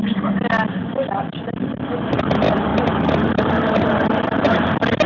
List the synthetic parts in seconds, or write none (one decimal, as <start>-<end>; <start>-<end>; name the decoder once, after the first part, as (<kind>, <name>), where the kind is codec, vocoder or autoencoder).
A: 0.0-2.7 (vocoder, BigVGAN v2); 3.3-5.1